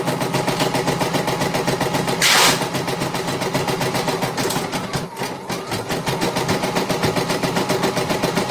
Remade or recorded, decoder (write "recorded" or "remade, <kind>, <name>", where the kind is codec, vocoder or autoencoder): recorded